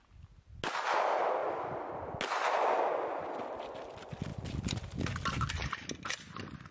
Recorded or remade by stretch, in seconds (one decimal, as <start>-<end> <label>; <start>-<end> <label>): 0.0-6.7 recorded